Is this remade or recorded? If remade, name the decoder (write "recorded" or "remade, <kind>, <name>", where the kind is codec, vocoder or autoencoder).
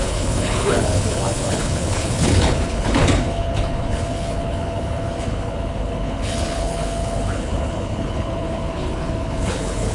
remade, codec, HILCodec